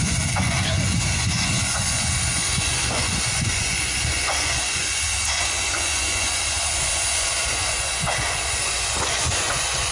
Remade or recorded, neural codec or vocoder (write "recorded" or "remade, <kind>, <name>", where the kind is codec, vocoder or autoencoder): remade, vocoder, Vocos